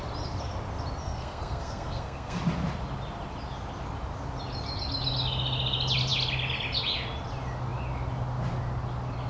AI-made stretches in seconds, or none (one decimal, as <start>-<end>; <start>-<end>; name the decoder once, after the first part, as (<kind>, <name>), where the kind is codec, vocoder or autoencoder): 1.0-2.4 (codec, SNAC)